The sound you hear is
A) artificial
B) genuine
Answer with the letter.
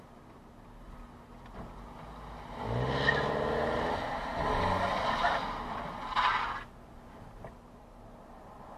B